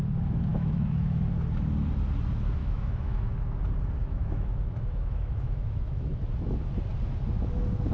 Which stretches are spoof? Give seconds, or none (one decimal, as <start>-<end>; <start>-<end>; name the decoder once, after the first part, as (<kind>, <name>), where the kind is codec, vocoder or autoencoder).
0.5-1.2 (autoencoder, DAC-VAE); 2.6-3.6; 4.0-6.2